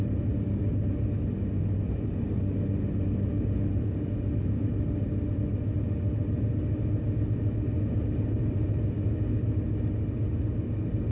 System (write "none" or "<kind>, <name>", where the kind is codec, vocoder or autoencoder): none